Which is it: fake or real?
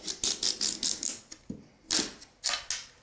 real